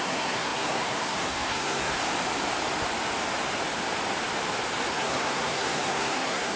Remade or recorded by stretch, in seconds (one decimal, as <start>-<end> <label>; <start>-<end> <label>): 0.0-2.0 remade; 2.0-4.9 recorded; 4.9-6.6 remade